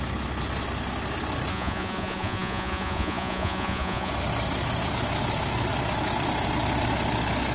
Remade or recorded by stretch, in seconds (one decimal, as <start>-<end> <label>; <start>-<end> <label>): 0.0-1.5 recorded; 1.5-4.1 remade; 4.1-7.5 recorded